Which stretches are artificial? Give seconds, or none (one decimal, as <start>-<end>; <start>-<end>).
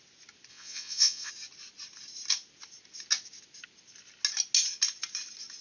0.5-1.3